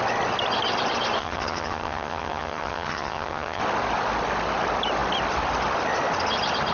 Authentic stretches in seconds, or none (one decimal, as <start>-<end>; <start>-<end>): 0.0-1.2; 3.6-6.7